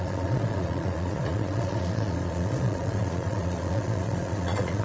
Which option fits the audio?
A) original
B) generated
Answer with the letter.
B